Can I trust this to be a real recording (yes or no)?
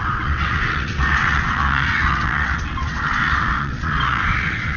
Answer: no